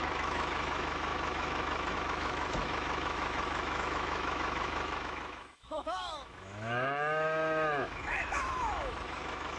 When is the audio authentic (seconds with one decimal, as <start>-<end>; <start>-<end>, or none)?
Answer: none